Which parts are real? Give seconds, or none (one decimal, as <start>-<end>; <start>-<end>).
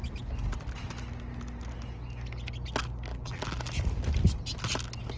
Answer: 0.0-3.1; 3.6-5.2